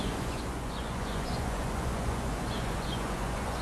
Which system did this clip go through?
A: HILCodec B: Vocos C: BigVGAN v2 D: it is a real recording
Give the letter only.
B